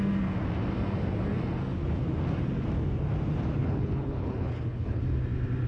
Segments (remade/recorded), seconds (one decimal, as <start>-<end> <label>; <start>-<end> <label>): 0.0-3.6 recorded; 3.6-5.0 remade; 5.0-5.7 recorded